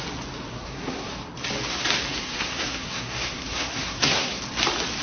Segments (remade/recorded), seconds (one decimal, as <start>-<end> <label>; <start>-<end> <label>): 0.0-0.5 recorded; 0.5-1.1 remade; 1.1-2.1 recorded; 2.1-4.4 remade; 4.4-5.0 recorded